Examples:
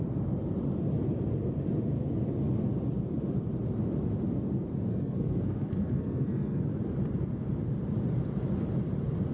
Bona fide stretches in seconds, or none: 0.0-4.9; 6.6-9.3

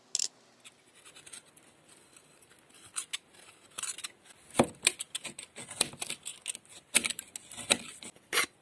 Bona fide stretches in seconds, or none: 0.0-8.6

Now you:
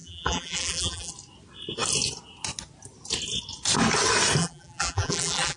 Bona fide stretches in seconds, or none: 1.1-4.4

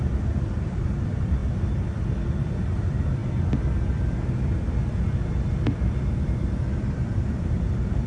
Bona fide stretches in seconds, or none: 1.4-2.4; 3.2-6.8